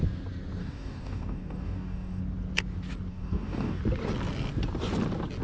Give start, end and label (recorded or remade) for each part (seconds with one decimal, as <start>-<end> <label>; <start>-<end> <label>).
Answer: 0.0-0.6 recorded; 0.6-2.2 remade; 2.2-3.1 recorded; 3.1-3.8 remade; 3.8-5.4 recorded